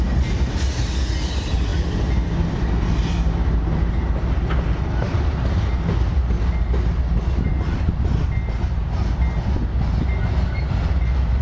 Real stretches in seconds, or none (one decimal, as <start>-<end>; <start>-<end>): 0.0-11.4